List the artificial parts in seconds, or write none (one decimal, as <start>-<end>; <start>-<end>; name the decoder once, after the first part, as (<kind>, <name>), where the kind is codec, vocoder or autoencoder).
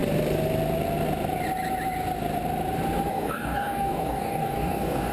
3.1-5.1 (codec, DAC)